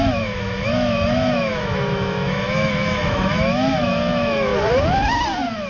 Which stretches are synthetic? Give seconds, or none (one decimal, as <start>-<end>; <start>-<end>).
0.0-4.5